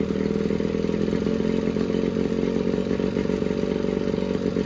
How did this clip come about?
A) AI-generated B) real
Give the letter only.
B